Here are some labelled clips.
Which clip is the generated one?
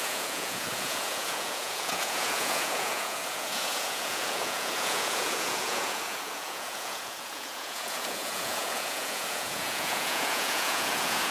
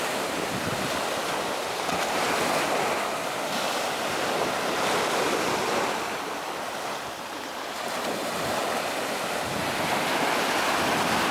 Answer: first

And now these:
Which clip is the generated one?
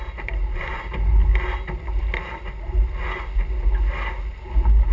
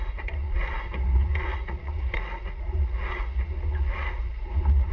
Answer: second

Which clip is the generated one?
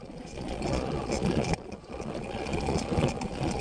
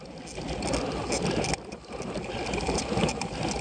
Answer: first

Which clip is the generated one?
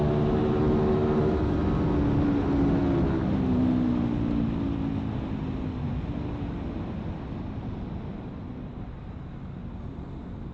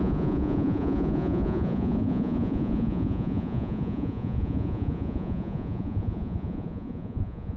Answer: second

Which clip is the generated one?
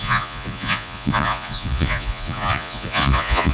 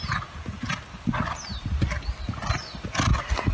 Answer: first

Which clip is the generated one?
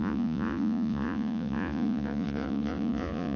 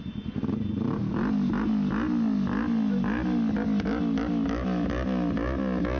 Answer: first